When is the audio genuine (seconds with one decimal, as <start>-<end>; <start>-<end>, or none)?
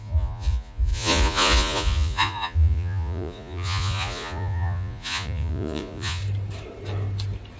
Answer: 6.2-7.6